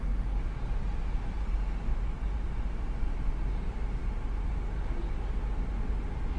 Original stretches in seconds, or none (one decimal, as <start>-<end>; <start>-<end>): 0.0-1.9; 2.8-4.0; 4.5-6.4